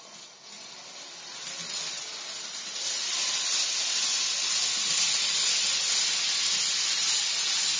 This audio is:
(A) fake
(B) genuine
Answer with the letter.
B